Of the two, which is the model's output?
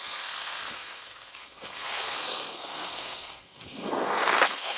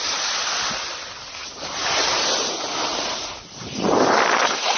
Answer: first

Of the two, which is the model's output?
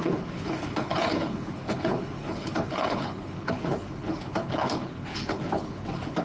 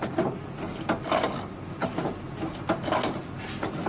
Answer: first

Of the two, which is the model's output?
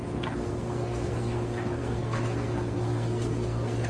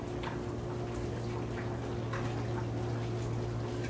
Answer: first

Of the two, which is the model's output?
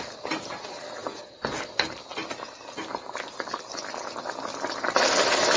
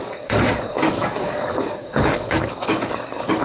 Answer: second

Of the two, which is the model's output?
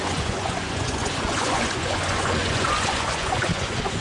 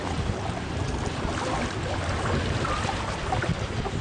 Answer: first